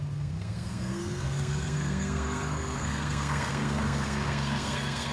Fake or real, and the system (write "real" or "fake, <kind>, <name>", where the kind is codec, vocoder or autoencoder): fake, codec, SNAC